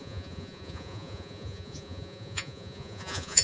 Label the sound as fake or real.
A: fake